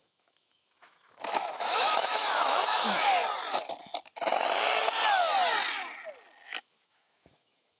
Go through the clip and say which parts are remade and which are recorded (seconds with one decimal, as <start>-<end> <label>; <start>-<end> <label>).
0.0-3.1 remade; 3.1-6.5 recorded; 6.5-7.8 remade